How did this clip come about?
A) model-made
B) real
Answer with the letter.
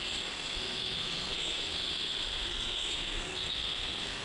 A